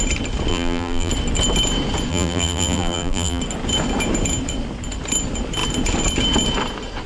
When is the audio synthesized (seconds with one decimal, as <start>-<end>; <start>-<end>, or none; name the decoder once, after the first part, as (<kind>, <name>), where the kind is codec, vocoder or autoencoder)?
0.5-1.1 (vocoder, BigVGAN v2); 2.1-3.4